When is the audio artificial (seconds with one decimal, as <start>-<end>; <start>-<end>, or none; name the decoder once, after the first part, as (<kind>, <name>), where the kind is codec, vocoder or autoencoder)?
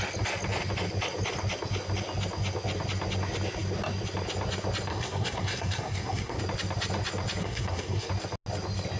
4.9-6.4 (codec, SNAC); 7.4-8.1